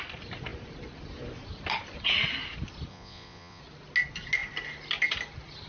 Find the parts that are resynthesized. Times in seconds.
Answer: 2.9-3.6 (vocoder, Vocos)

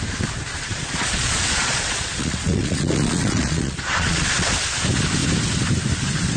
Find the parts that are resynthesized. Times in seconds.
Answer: 0.7-4.5 (vocoder, Vocos)